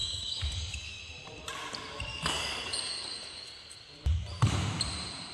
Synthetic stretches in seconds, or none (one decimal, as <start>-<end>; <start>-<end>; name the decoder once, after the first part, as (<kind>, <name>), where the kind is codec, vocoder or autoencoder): 0.0-1.0 (codec, DAC); 2.1-3.8